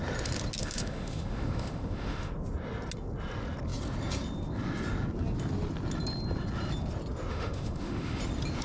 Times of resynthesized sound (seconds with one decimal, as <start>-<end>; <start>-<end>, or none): 0.6-2.3; 7.3-8.2